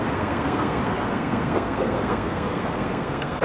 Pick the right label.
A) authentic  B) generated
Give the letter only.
B